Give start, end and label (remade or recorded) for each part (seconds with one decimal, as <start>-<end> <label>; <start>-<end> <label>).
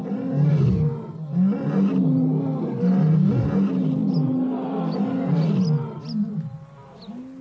0.0-7.4 recorded